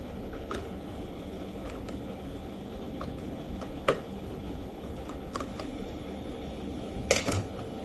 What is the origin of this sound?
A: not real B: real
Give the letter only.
A